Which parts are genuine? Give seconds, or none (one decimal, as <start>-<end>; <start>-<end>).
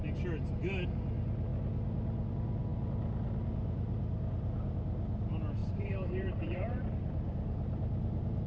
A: 0.0-5.6